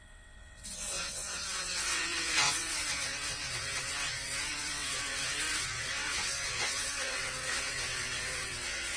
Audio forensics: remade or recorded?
remade